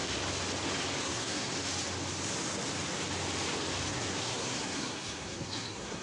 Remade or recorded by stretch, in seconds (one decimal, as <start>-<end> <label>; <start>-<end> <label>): 0.0-1.0 recorded; 1.0-1.5 remade; 1.5-3.9 recorded; 3.9-6.0 remade